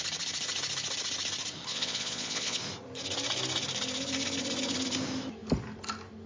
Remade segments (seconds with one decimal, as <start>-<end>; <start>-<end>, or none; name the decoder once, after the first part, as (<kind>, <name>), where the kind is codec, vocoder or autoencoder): 1.7-2.6 (vocoder, Vocos)